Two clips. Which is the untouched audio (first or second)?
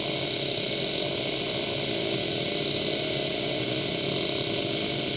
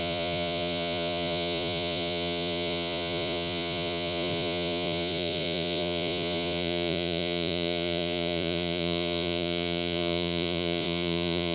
first